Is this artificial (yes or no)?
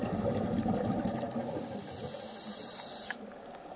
no